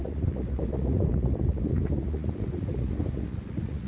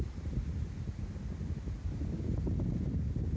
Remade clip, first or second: first